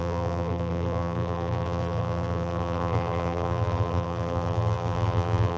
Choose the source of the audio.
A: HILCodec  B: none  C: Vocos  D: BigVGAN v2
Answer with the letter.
D